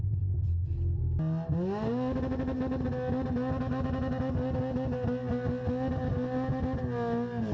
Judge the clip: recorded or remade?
recorded